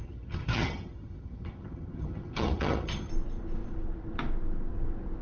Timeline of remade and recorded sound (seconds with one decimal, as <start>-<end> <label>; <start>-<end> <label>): 0.0-3.1 remade; 3.1-5.2 recorded